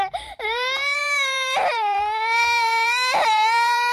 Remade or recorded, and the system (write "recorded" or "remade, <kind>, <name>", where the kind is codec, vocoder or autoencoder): remade, vocoder, BigVGAN v2